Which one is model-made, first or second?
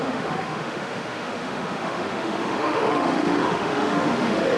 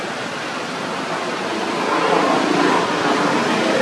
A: first